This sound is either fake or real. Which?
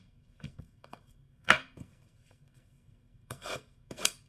fake